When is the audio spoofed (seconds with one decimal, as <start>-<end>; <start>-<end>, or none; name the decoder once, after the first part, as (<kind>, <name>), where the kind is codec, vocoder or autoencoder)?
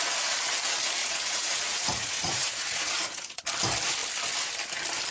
1.0-3.4 (vocoder, Vocos)